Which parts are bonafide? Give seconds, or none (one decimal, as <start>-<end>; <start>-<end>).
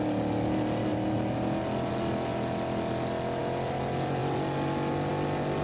0.0-5.6